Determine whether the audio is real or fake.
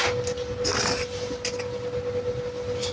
real